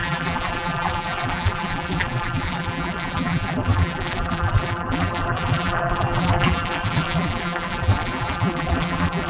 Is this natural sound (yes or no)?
no